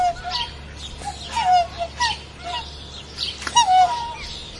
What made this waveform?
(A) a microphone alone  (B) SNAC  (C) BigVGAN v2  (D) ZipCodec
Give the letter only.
A